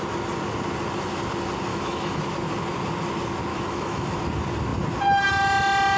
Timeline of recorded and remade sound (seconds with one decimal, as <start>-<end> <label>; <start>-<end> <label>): 0.0-1.7 recorded; 1.7-2.2 remade; 2.2-3.5 recorded; 3.5-4.2 remade; 4.2-6.0 recorded